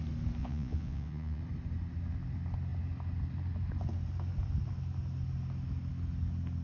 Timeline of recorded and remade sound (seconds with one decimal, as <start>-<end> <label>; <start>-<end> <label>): 0.0-0.4 recorded; 0.4-1.4 remade; 1.4-6.6 recorded